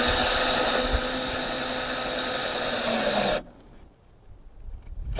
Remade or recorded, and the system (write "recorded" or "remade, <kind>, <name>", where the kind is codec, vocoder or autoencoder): recorded